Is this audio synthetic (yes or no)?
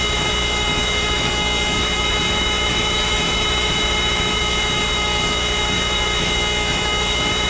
yes